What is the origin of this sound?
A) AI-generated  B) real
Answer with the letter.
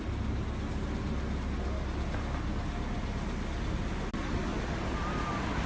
B